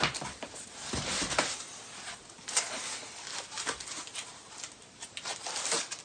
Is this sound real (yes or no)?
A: yes